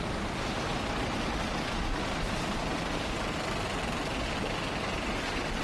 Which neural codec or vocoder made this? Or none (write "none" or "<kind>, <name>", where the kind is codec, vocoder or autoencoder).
none